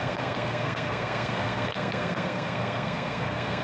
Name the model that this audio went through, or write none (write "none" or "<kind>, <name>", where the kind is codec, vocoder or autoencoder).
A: codec, SNAC